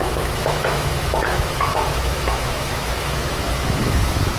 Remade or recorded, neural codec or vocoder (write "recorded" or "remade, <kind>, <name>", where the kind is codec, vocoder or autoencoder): remade, autoencoder, DAC-VAE